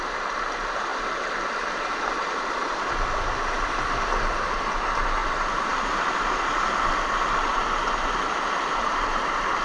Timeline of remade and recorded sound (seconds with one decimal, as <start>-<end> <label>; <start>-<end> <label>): 0.0-0.9 recorded; 0.9-4.7 remade; 4.7-5.2 recorded; 5.2-5.9 remade; 5.9-7.5 recorded; 7.5-9.0 remade; 9.0-9.6 recorded